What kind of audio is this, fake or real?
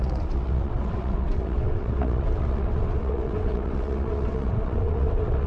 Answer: fake